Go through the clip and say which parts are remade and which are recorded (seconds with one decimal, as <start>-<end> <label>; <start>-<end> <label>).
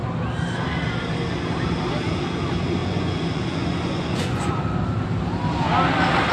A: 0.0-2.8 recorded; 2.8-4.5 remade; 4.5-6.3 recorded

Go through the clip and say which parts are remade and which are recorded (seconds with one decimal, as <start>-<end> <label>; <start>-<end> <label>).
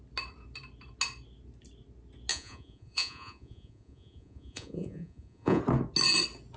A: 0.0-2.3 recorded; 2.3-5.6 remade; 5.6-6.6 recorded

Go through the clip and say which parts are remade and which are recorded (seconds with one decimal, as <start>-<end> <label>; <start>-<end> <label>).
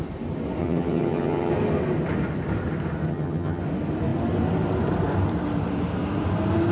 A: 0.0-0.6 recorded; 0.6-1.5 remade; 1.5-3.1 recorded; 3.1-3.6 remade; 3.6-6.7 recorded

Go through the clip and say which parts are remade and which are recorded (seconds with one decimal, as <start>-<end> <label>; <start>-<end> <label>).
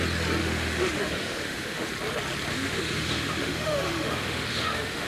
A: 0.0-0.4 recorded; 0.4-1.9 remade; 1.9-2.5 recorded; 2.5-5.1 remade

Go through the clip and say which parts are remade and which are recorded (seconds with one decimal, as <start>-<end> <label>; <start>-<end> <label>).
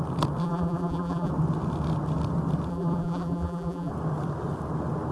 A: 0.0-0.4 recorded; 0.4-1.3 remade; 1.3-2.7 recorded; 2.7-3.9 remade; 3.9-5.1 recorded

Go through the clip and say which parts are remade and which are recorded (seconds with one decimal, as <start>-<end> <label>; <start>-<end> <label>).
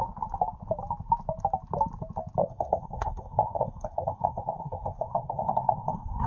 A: 0.0-2.4 recorded; 2.4-6.3 remade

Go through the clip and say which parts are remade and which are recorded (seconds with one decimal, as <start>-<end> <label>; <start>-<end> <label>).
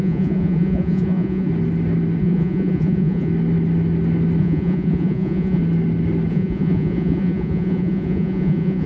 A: 0.0-1.5 remade; 1.5-2.2 recorded; 2.2-3.3 remade; 3.3-4.4 recorded; 4.4-5.6 remade; 5.6-6.3 recorded; 6.3-8.9 remade